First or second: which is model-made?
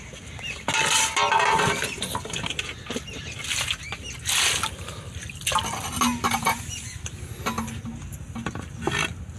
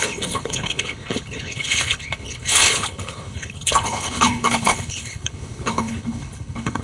second